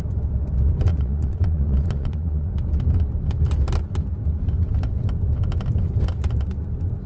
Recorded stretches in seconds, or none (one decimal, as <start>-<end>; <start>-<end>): 0.0-0.9; 2.5-7.1